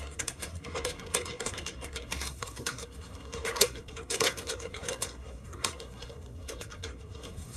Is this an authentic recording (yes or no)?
no